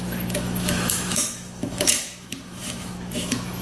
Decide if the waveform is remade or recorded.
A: remade